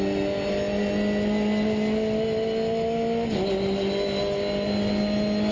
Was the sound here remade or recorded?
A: recorded